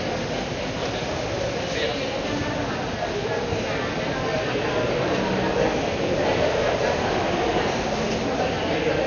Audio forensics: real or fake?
real